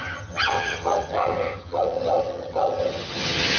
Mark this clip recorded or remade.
remade